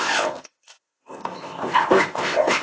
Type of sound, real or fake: fake